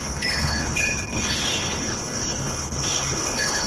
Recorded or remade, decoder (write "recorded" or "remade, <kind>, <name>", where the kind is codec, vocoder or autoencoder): remade, codec, HILCodec